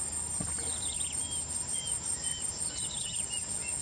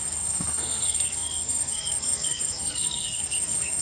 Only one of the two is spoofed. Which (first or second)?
second